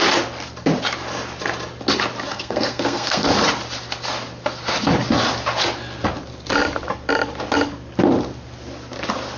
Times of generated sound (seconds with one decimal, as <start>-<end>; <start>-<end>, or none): 2.3-3.2

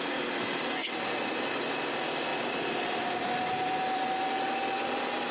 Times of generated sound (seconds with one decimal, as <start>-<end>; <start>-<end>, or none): none

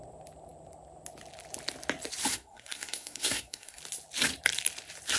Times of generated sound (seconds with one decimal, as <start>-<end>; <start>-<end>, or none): 2.3-3.8

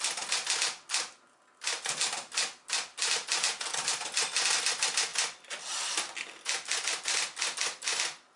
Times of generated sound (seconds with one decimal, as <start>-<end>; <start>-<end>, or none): none

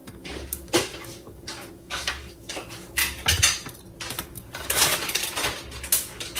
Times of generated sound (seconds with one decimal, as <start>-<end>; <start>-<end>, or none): 0.0-3.0; 4.1-5.2; 5.8-6.4

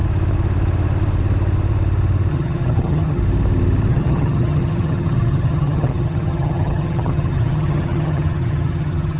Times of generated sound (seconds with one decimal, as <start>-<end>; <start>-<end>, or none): 2.3-3.2; 3.9-9.2

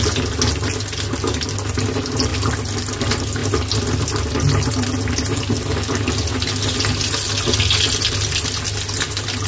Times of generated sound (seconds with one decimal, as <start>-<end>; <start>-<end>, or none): none